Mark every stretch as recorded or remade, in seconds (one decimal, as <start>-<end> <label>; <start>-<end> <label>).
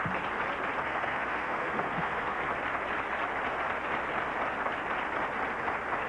0.0-0.8 recorded; 0.8-2.4 remade; 2.4-6.1 recorded